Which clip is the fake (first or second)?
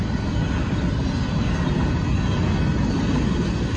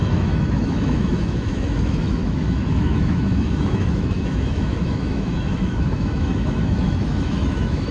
second